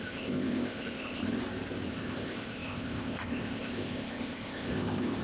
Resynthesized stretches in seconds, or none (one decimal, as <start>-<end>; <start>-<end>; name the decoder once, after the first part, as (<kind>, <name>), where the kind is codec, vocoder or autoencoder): 0.0-1.2 (codec, ZipCodec); 1.9-5.2